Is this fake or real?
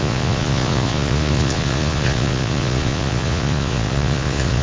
fake